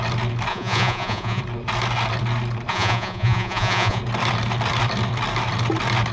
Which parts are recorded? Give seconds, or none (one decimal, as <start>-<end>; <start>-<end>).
0.0-0.5; 1.4-2.7; 4.0-6.1